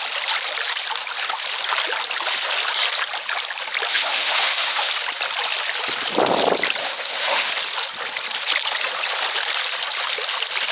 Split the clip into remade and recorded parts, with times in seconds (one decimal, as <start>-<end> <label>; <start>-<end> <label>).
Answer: 0.0-3.9 recorded; 3.9-4.9 remade; 4.9-6.8 recorded; 6.8-7.5 remade; 7.5-10.7 recorded